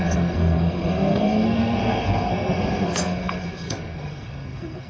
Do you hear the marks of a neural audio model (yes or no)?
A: yes